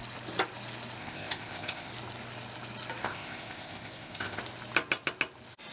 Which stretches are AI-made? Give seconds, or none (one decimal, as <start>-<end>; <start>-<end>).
1.0-1.9; 3.0-4.4